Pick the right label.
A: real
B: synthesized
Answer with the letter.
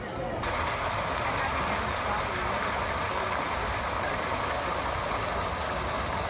A